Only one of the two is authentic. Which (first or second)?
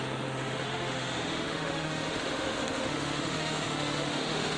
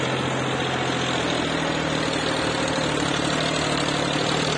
second